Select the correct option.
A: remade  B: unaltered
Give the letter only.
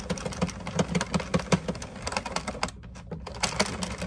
B